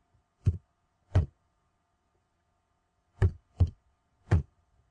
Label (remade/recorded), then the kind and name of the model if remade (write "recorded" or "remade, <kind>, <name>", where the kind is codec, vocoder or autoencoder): remade, vocoder, Vocos